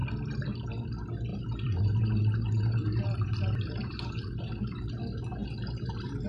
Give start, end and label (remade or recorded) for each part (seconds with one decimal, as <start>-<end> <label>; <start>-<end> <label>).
0.0-1.3 recorded; 1.3-4.9 remade; 4.9-5.4 recorded; 5.4-6.3 remade

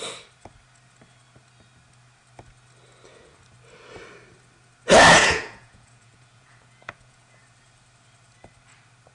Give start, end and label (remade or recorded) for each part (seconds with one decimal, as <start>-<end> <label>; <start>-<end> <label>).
0.0-5.2 recorded; 5.2-7.4 remade; 7.4-9.1 recorded